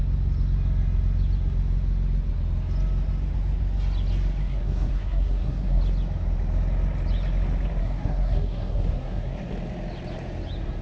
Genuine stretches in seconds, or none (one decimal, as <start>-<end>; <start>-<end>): 0.0-4.4; 5.8-7.8; 9.4-10.8